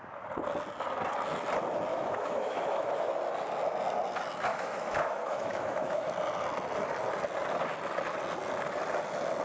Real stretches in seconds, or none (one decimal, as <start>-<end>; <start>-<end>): 0.0-1.9; 3.1-4.5; 6.1-9.4